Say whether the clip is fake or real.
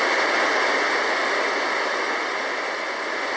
real